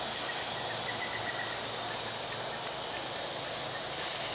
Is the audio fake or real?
real